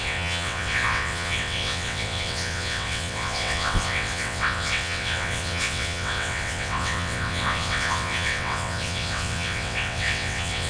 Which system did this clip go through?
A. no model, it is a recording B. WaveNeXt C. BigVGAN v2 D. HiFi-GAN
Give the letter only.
B